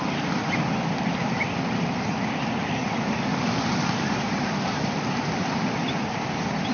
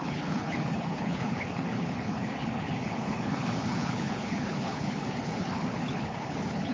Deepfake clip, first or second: second